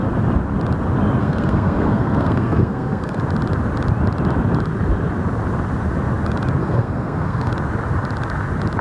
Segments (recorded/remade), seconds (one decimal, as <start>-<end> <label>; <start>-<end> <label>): 0.0-1.2 recorded; 1.2-3.2 remade; 3.2-6.6 recorded; 6.6-7.5 remade; 7.5-8.8 recorded